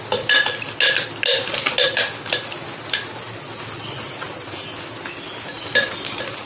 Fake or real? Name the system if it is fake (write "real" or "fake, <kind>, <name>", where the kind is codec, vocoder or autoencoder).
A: real